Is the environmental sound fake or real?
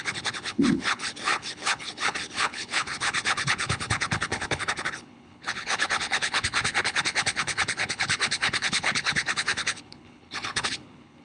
fake